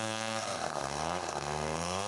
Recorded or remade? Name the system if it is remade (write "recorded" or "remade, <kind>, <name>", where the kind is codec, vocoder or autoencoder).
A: remade, codec, SNAC